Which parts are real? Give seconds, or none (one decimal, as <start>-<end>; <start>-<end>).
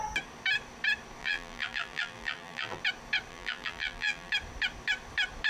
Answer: 0.0-1.2; 2.8-3.3; 4.3-5.5